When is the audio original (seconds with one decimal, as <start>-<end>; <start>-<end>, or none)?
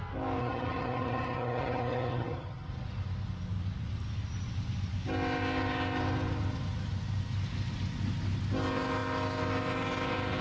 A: 0.0-0.4; 2.7-10.4